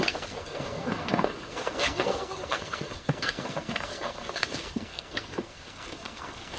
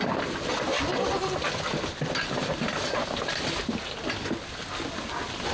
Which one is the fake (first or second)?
first